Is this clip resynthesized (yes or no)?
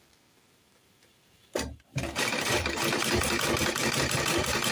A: yes